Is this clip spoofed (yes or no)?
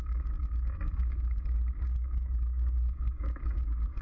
yes